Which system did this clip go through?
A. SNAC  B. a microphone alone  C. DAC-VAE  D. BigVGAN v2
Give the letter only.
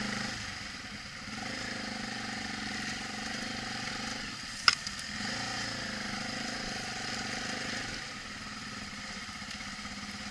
B